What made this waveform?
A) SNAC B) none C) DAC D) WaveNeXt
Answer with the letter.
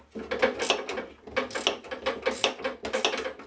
B